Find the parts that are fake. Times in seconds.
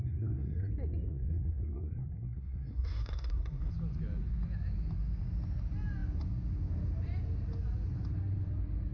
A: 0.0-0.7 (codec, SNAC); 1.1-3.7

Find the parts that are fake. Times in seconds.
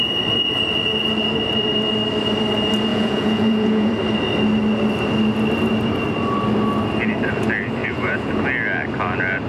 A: 2.9-3.9 (vocoder, Vocos); 7.8-8.4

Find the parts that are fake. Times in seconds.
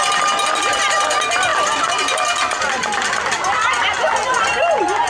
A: 1.5-3.4 (vocoder, BigVGAN v2)